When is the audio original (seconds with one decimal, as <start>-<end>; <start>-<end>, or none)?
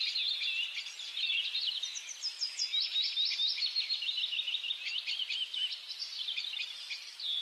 0.0-1.1; 1.9-3.5; 6.4-7.4